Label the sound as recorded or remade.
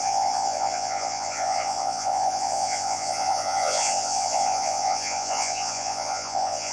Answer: remade